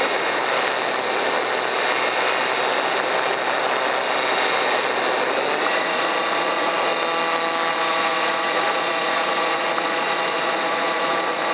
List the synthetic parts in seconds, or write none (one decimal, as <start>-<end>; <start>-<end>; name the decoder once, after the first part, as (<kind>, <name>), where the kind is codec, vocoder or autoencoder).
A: 0.0-0.4 (vocoder, Vocos); 5.6-6.9; 7.7-11.5